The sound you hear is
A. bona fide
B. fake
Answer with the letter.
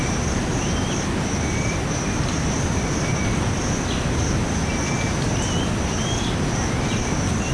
A